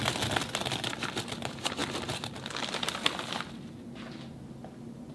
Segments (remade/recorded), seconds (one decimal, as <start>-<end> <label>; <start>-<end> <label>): 0.0-5.1 recorded